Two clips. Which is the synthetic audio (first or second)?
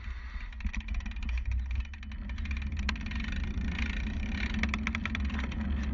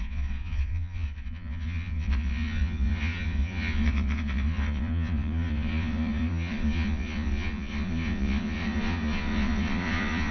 second